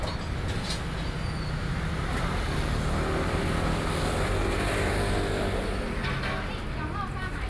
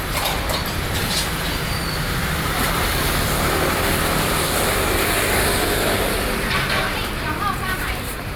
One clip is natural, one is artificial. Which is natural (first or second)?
first